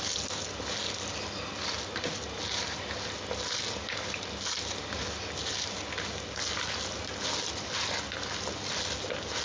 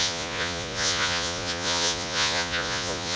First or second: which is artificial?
second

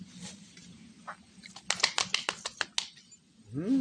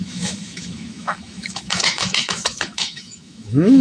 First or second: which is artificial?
second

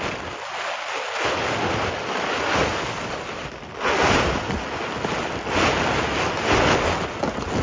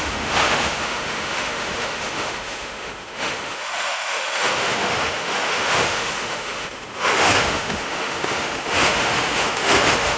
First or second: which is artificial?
second